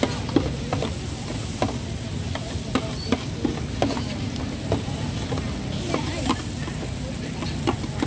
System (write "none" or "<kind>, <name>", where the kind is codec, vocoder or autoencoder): none